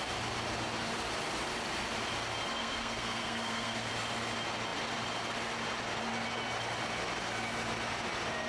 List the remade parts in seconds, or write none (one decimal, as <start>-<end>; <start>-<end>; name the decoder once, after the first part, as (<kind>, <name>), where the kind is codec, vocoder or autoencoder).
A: 2.6-3.9 (codec, SNAC)